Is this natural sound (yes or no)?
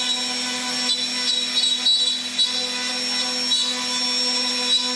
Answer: yes